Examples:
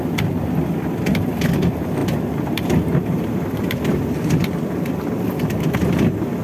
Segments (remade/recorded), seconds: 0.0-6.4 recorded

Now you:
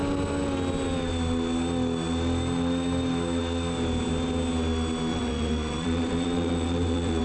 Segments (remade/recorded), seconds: 0.0-5.1 recorded; 5.1-7.2 remade

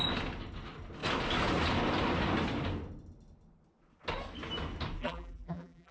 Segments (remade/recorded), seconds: 0.0-5.0 recorded; 5.0-5.9 remade

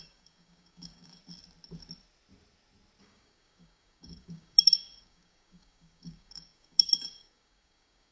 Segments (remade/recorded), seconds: 0.0-1.2 remade; 1.2-3.0 recorded; 3.0-8.1 remade

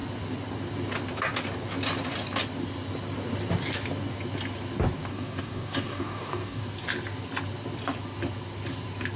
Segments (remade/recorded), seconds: 0.0-5.1 recorded; 5.1-6.6 remade; 6.6-9.2 recorded

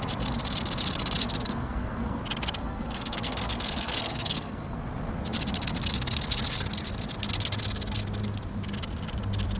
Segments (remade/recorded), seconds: 0.0-1.2 recorded; 1.2-2.2 remade; 2.2-2.6 recorded; 2.6-4.8 remade; 4.8-9.6 recorded